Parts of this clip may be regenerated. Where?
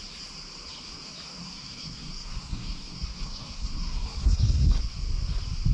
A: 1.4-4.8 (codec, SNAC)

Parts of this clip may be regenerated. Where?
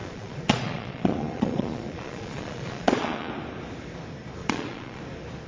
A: 0.0-3.3 (vocoder, Vocos); 4.4-5.0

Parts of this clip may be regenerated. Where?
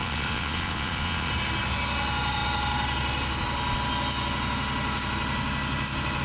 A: 0.0-1.3 (vocoder, Vocos)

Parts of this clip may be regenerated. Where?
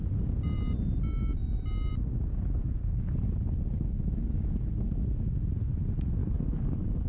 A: 6.2-7.1 (codec, DAC)